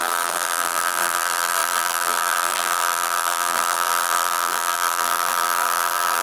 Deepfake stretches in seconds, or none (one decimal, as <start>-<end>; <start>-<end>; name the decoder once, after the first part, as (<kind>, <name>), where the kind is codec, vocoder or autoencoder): 0.0-6.2 (vocoder, BigVGAN v2)